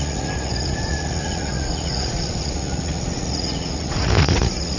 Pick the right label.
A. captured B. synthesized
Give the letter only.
B